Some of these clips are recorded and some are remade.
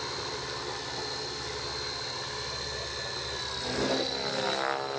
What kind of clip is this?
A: recorded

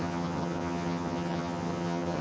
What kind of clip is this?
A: remade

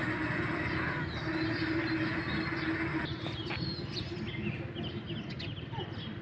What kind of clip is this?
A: recorded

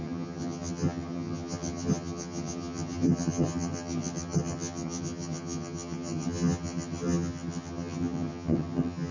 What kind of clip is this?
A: remade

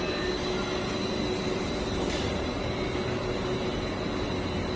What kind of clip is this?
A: recorded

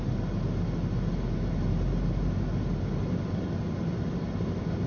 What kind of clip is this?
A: recorded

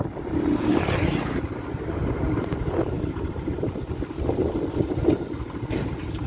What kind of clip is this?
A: recorded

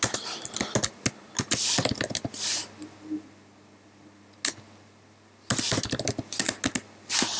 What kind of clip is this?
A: recorded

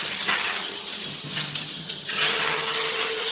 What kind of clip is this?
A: remade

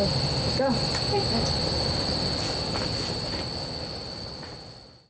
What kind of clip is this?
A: recorded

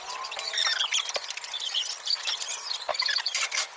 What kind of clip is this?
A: recorded